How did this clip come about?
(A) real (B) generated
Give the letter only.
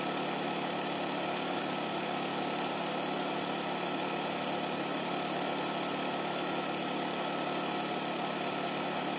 A